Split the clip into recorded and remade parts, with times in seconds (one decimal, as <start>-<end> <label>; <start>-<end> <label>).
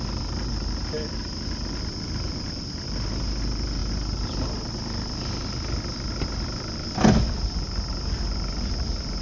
0.0-9.2 recorded